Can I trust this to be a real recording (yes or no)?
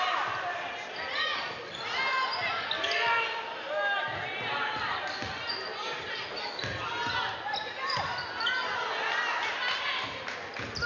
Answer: yes